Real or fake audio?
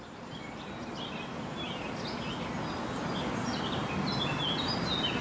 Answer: real